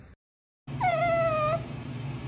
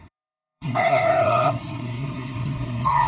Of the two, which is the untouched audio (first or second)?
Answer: first